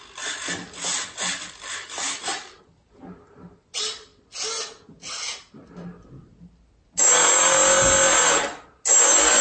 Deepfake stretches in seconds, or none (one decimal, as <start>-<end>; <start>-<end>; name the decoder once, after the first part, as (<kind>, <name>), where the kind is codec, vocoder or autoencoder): none